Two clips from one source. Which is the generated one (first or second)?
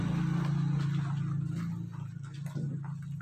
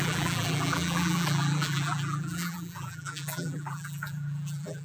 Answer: second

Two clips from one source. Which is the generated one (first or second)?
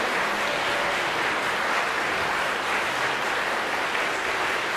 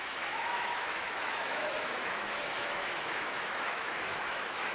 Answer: second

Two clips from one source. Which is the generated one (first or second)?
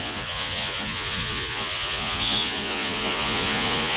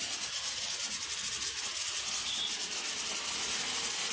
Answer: first